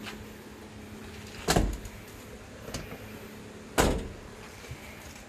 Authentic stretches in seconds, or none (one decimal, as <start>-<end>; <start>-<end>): 0.0-5.3